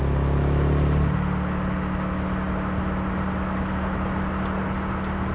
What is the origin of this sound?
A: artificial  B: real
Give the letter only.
B